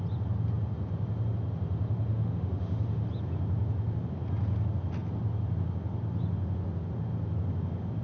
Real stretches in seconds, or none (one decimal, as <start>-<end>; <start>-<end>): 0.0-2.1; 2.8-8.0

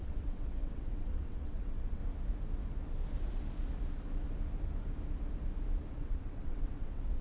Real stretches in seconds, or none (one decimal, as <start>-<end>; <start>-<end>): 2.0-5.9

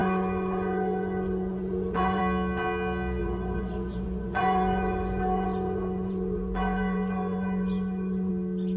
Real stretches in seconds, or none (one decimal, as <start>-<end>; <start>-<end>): 2.2-3.2; 8.3-8.8